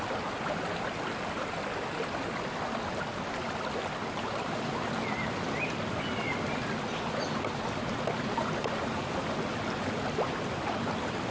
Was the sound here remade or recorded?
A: recorded